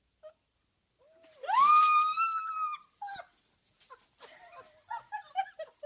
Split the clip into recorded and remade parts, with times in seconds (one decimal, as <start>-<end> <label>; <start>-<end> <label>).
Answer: 0.0-5.9 recorded